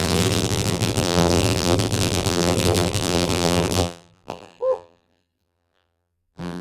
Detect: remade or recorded remade